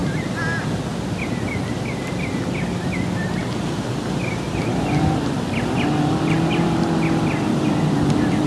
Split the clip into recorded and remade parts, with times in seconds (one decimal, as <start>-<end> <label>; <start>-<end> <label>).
0.0-8.5 recorded